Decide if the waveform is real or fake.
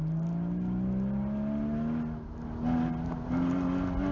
real